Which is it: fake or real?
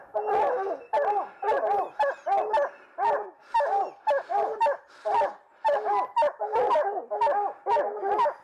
real